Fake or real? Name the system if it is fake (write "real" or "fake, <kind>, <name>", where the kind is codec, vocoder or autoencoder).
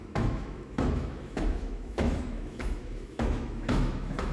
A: fake, autoencoder, DAC-VAE